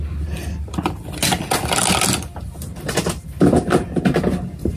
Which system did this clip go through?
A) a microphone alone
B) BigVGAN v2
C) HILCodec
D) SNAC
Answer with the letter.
A